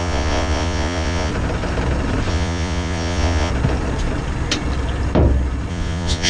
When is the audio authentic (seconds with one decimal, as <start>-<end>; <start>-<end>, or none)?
1.3-2.3; 3.5-5.7